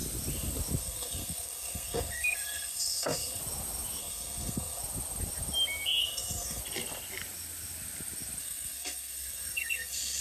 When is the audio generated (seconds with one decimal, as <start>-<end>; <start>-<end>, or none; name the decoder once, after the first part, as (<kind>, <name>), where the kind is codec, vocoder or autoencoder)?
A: 0.8-3.4 (codec, SNAC); 4.0-4.8; 6.0-6.6; 8.4-10.2